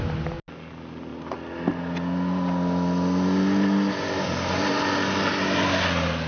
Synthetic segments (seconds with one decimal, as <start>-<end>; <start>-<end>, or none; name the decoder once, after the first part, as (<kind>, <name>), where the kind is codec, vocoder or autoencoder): none